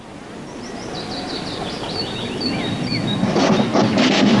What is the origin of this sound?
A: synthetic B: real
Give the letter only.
B